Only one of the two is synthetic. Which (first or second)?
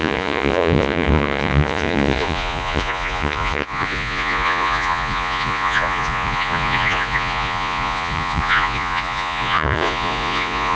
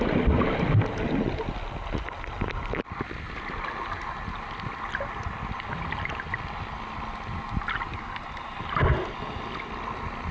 first